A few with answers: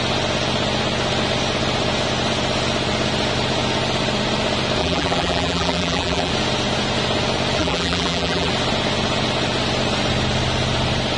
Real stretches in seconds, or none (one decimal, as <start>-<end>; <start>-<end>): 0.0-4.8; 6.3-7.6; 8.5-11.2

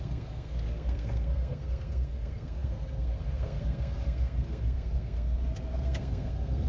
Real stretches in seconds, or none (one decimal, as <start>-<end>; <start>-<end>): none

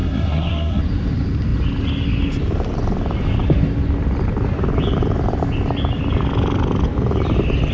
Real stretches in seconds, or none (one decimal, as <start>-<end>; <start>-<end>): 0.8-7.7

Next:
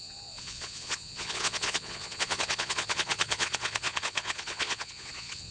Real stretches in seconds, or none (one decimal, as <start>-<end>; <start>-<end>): none